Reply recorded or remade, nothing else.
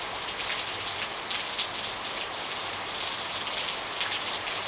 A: recorded